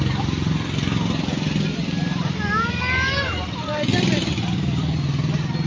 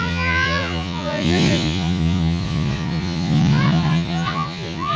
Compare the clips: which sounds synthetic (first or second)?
second